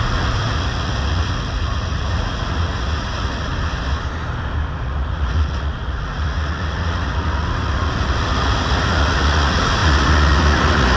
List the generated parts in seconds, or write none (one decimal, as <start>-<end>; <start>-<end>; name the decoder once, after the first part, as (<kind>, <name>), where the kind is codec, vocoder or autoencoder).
0.0-3.5 (vocoder, Vocos); 4.8-11.0